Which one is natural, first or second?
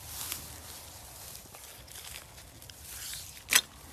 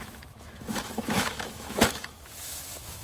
first